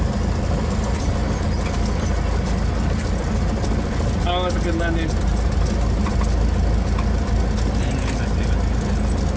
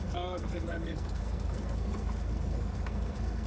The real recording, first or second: first